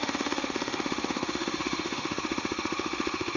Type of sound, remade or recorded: remade